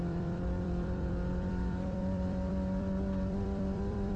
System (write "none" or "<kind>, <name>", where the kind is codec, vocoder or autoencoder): vocoder, BigVGAN v2